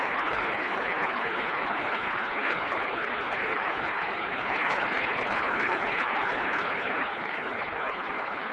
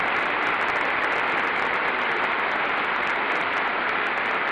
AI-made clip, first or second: first